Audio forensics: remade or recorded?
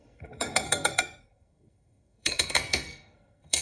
remade